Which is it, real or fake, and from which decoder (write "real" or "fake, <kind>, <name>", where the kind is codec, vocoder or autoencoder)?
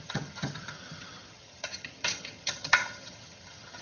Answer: fake, vocoder, HiFi-GAN